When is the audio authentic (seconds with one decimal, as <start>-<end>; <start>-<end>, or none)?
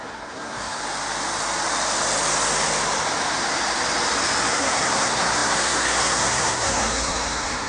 0.8-4.5